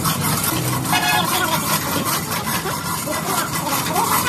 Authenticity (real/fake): real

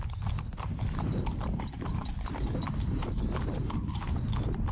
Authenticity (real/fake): real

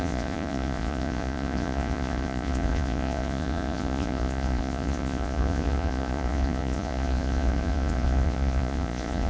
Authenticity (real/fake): fake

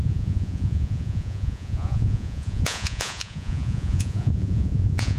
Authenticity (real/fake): fake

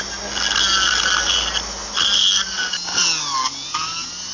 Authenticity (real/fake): real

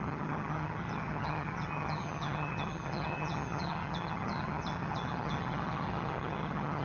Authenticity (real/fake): fake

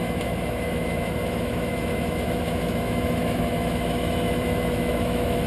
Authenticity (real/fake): fake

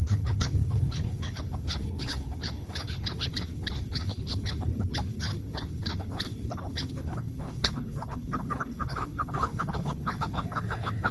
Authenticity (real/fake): fake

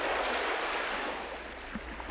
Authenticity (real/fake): real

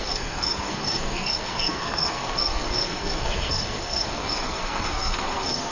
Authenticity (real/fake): fake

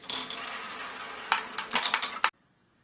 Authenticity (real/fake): real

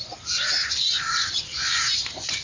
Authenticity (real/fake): fake